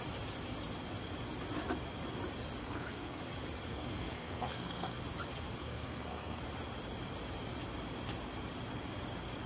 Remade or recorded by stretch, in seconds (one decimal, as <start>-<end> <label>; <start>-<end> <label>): 0.0-2.6 recorded; 2.6-3.2 remade; 3.2-3.7 recorded; 3.7-5.0 remade; 5.0-5.6 recorded; 5.6-6.4 remade; 6.4-9.5 recorded